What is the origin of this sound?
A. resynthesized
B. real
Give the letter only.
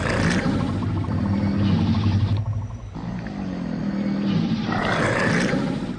B